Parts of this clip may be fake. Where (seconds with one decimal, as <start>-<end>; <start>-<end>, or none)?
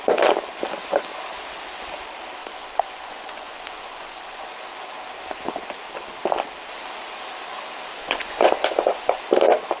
2.4-4.5; 8.0-9.2